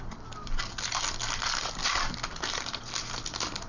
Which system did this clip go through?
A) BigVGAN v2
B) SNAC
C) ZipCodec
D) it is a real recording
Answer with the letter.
D